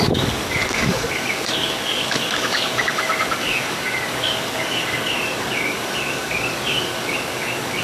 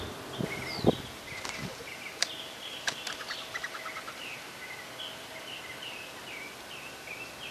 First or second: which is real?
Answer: second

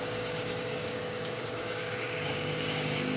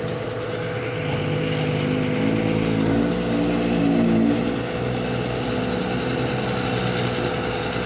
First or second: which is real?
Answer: second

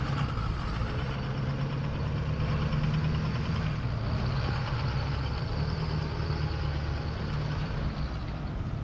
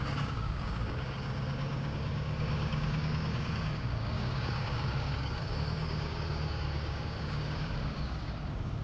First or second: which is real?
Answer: first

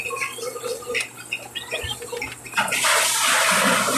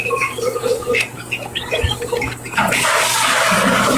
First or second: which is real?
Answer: first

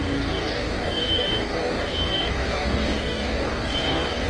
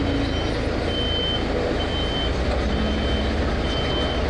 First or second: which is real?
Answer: second